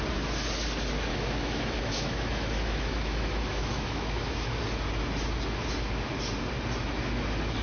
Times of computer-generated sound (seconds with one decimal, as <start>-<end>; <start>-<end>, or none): 1.1-4.6